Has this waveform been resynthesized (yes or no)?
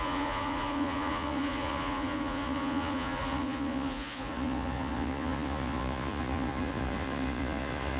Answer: yes